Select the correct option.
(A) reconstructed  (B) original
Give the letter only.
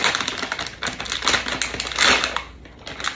B